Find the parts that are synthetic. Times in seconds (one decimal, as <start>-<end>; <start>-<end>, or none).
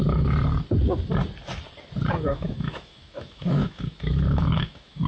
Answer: 2.3-5.1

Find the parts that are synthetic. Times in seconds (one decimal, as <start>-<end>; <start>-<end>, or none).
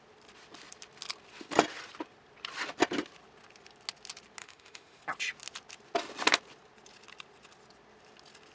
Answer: 4.4-5.0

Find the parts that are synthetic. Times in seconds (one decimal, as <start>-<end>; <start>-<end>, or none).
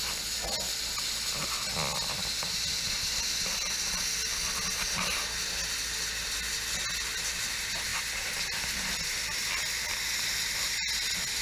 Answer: none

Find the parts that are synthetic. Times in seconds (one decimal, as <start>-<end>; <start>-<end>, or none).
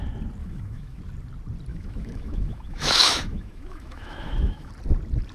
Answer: 0.4-1.0; 1.7-4.7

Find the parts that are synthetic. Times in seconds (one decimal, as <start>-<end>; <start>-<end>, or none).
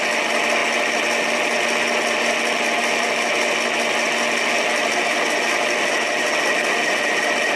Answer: none